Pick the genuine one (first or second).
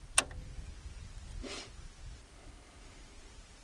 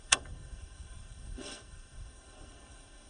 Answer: first